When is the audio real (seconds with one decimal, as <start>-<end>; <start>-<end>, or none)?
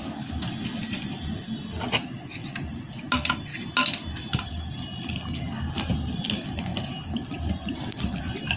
0.0-2.4; 2.9-6.7; 8.2-8.6